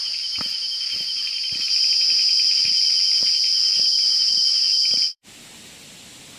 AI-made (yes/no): yes